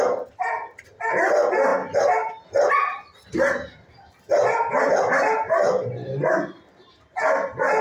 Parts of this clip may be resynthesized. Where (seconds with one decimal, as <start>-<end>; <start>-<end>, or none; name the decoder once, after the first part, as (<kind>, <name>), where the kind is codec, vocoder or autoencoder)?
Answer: none